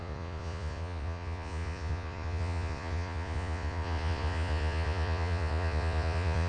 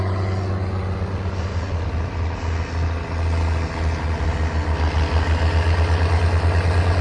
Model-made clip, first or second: first